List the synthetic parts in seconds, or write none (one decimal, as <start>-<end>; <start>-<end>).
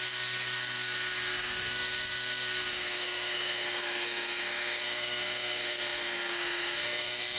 0.0-7.4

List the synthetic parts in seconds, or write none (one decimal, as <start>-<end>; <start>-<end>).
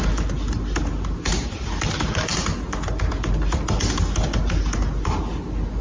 none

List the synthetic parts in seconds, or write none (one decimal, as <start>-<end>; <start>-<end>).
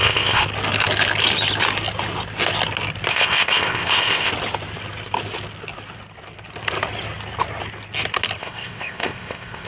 0.0-0.4; 3.1-4.3; 8.4-9.7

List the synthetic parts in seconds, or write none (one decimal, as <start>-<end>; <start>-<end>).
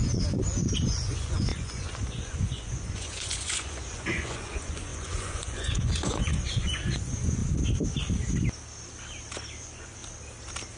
0.0-7.4; 9.6-10.0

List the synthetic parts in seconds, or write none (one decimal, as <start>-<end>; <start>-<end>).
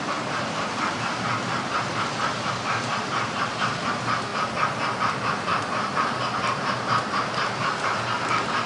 0.0-4.3; 5.0-8.7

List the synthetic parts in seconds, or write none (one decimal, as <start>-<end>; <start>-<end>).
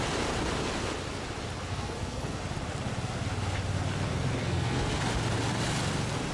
1.7-2.4; 4.4-5.0